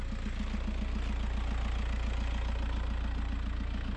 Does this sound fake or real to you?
real